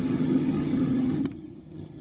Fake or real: fake